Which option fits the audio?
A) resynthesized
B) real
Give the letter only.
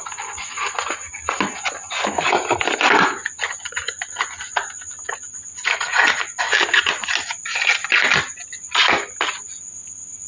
B